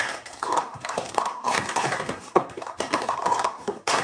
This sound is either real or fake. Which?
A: fake